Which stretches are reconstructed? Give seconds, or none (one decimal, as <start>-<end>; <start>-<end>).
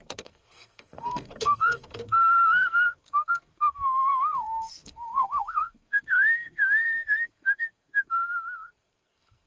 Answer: 0.0-9.5